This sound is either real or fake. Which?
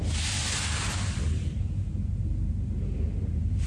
real